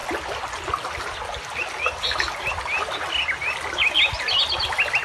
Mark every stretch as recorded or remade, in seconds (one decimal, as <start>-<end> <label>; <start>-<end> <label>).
0.0-5.0 recorded